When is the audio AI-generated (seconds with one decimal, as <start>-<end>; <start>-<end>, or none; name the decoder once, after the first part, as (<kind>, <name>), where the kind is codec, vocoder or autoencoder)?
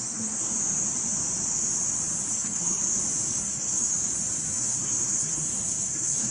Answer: 0.0-0.6 (codec, SNAC); 2.3-2.8; 3.4-3.9; 4.5-6.3